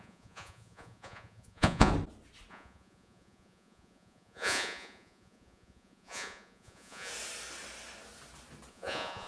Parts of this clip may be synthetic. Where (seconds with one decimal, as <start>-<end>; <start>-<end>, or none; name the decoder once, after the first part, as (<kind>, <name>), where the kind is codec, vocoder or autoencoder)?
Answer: 0.0-1.9 (vocoder, Vocos); 2.5-7.1; 8.7-9.3